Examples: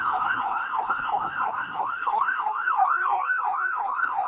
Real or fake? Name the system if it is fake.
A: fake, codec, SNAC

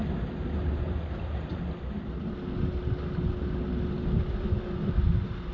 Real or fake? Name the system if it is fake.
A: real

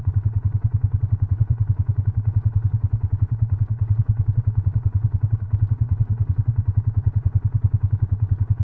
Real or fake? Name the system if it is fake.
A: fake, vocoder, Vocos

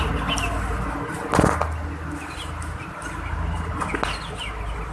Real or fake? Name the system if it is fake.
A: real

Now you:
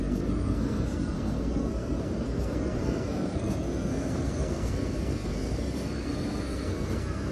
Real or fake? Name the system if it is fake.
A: fake, codec, SNAC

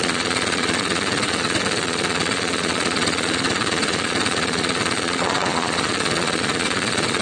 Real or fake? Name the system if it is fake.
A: fake, vocoder, Vocos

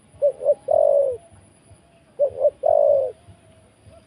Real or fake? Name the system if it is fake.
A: real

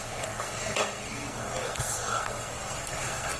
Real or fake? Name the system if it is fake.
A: fake, codec, SNAC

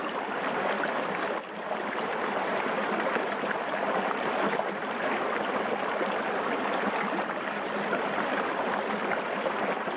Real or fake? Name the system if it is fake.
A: real